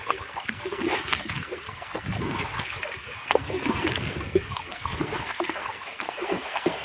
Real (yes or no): no